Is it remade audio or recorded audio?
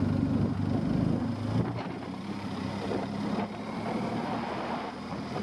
recorded